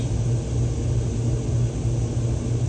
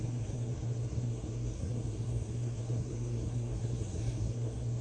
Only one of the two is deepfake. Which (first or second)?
second